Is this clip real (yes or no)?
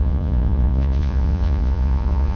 no